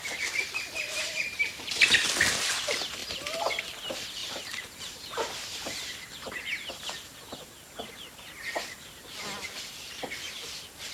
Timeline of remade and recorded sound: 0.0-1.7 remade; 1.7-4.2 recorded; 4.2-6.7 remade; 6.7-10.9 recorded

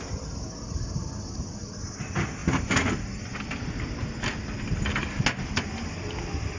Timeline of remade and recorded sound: 0.0-6.6 recorded

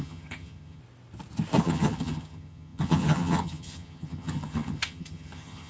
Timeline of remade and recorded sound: 0.0-0.8 remade; 0.8-1.6 recorded; 1.6-5.7 remade

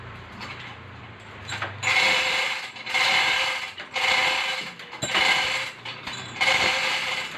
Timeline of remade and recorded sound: 0.0-4.2 remade; 4.2-5.3 recorded; 5.3-7.4 remade

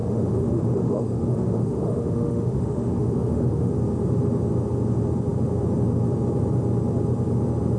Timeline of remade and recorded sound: 0.0-3.7 remade; 3.7-7.8 recorded

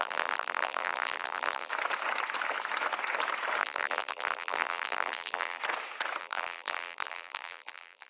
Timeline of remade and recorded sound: 0.0-1.7 remade; 1.7-3.6 recorded; 3.6-5.6 remade; 5.6-6.2 recorded; 6.2-8.1 remade

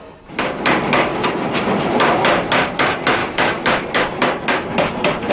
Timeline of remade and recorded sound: 0.0-1.1 recorded; 1.1-1.8 remade; 1.8-3.2 recorded; 3.2-5.3 remade